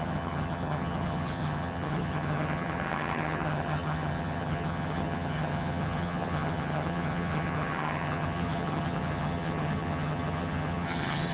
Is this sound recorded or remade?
remade